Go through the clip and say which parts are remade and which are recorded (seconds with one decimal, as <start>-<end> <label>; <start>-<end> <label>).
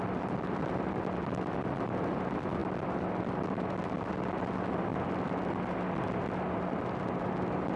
0.0-7.8 recorded